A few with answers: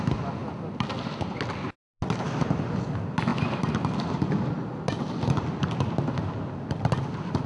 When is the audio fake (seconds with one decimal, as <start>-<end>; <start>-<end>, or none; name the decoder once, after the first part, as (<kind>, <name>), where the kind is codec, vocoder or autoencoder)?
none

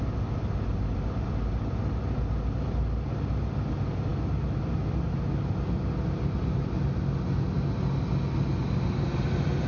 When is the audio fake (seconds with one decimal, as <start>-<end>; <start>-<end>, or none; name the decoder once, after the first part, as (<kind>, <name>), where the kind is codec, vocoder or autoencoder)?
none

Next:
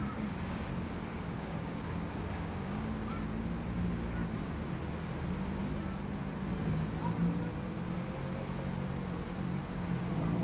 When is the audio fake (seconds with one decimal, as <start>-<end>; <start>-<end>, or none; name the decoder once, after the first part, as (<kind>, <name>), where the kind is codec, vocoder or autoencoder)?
0.0-3.1 (codec, DAC)

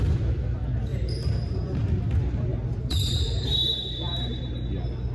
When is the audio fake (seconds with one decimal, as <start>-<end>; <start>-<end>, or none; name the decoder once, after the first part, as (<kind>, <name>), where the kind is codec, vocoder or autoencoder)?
0.9-1.9 (vocoder, BigVGAN v2); 2.5-4.4

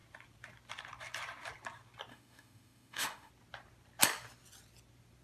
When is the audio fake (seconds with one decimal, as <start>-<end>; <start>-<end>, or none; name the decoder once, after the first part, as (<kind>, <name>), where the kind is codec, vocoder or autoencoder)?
2.1-3.3 (autoencoder, DAC-VAE)